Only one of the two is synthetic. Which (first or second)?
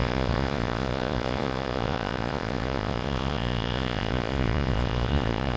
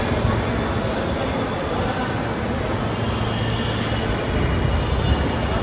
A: first